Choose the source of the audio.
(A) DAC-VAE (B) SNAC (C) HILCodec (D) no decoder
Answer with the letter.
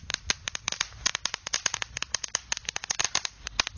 D